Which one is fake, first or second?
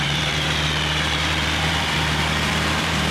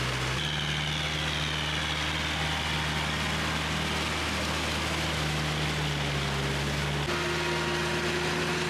first